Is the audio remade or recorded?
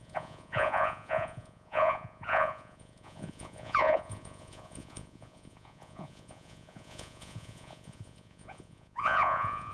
remade